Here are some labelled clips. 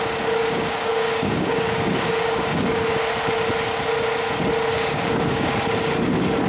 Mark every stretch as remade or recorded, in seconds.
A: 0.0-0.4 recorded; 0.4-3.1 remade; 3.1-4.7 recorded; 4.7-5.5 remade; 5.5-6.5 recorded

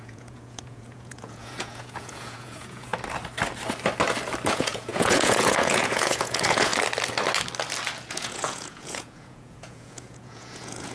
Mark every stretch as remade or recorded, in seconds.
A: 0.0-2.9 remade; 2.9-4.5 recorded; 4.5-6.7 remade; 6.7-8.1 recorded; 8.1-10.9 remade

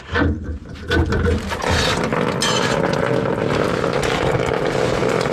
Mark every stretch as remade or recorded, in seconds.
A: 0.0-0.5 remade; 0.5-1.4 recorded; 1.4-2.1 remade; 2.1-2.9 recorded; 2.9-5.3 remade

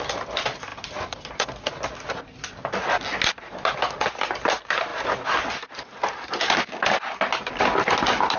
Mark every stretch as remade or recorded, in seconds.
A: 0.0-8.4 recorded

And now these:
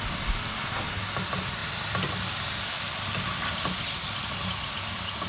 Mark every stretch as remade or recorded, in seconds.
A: 0.0-5.3 recorded

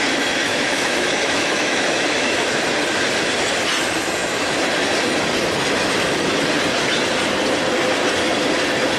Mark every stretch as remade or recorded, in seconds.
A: 0.0-0.5 recorded; 0.5-2.6 remade; 2.6-9.0 recorded